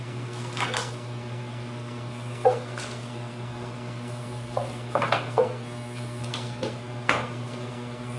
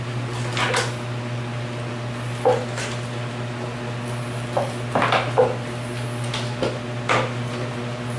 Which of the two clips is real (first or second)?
second